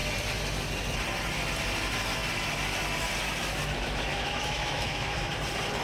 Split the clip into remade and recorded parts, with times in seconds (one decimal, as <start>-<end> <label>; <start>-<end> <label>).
0.0-4.1 recorded; 4.1-5.3 remade; 5.3-5.8 recorded